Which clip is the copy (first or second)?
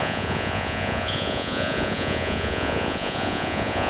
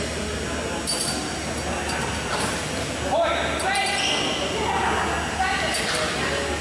first